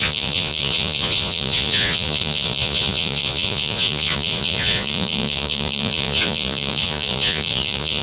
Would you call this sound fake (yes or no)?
yes